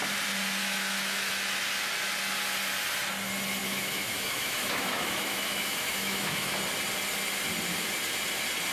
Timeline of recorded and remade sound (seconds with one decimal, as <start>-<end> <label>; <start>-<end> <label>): 0.0-0.6 recorded; 0.6-1.3 remade; 1.3-3.6 recorded; 3.6-6.5 remade; 6.5-8.7 recorded